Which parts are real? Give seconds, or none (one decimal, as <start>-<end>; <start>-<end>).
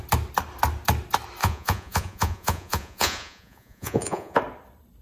0.0-1.4; 4.4-5.0